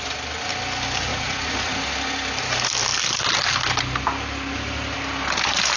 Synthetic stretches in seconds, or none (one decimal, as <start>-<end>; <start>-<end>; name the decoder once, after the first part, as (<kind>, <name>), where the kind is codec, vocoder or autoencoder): 1.1-1.7 (vocoder, Vocos)